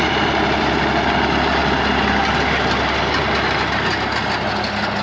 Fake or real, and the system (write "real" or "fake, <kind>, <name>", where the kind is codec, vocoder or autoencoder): real